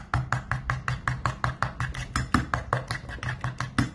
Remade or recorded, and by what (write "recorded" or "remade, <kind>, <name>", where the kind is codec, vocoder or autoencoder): recorded